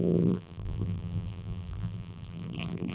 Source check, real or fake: fake